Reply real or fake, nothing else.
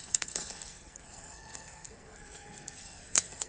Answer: fake